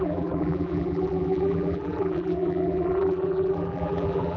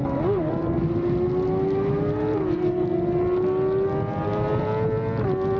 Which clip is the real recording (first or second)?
second